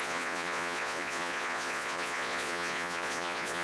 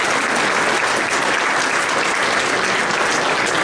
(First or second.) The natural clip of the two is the second